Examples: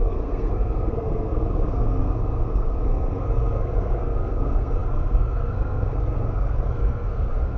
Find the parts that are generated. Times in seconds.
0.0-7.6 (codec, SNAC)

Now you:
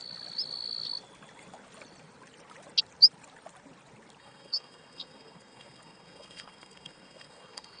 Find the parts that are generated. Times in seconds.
4.2-7.8 (codec, SNAC)

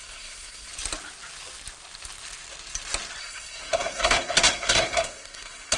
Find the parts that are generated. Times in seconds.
0.0-0.7 (codec, SNAC); 3.2-5.8

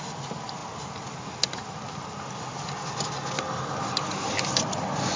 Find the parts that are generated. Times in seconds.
none

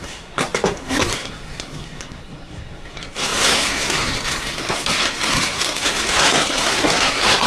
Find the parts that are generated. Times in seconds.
0.0-7.5 (codec, SNAC)

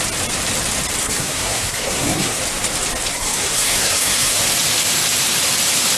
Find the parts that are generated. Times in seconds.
1.0-2.4 (codec, SNAC); 3.1-4.4

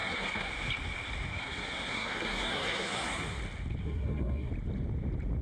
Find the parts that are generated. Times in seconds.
0.0-0.5 (codec, SNAC); 1.3-3.4; 3.8-4.5

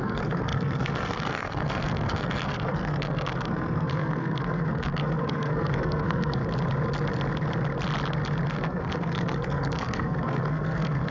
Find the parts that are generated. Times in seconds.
0.0-6.4 (codec, SNAC); 8.5-11.1